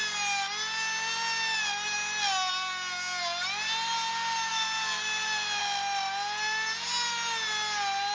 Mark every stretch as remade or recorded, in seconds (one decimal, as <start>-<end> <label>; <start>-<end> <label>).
0.0-4.5 recorded; 4.5-5.6 remade; 5.6-8.1 recorded

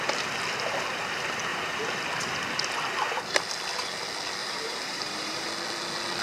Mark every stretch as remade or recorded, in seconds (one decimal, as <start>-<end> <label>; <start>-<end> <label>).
0.0-4.4 recorded; 4.4-5.5 remade; 5.5-6.2 recorded

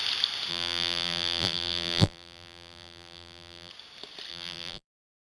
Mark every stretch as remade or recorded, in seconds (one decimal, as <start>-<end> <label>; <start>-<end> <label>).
0.0-0.5 recorded; 0.5-3.7 remade; 3.7-4.3 recorded; 4.3-5.3 remade

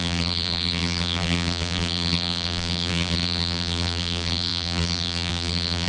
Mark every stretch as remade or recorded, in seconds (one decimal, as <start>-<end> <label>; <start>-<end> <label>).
0.0-5.9 remade

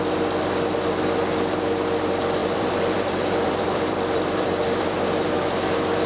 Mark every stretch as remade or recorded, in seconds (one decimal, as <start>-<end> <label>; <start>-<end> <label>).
0.0-2.4 recorded; 2.4-6.1 remade

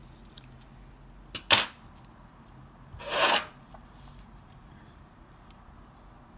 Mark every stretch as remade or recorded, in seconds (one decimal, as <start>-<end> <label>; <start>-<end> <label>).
0.0-2.3 recorded; 2.3-5.7 remade; 5.7-6.4 recorded

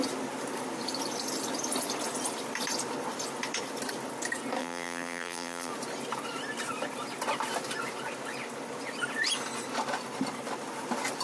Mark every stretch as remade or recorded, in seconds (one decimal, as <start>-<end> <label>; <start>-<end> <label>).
0.0-4.6 recorded; 4.6-5.7 remade; 5.7-11.2 recorded

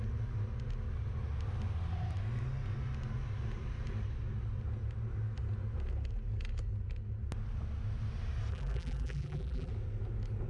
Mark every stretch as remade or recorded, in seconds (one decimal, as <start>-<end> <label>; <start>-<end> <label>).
0.0-8.5 recorded; 8.5-9.7 remade; 9.7-10.5 recorded